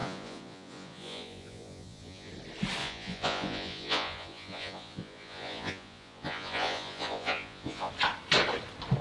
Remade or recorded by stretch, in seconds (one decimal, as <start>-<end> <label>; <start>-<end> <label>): 0.0-2.3 remade; 2.3-2.8 recorded; 2.8-7.9 remade; 7.9-9.0 recorded